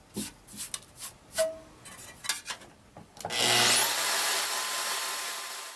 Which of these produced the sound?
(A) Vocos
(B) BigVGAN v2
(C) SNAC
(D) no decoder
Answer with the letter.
D